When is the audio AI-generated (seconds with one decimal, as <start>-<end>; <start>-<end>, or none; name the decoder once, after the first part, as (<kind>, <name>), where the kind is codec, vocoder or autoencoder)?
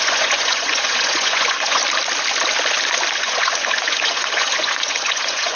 0.0-1.8 (vocoder, Vocos); 3.2-5.6